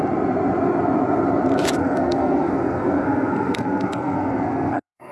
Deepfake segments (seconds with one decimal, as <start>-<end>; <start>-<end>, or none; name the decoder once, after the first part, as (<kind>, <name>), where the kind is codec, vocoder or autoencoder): 1.8-5.1 (codec, SNAC)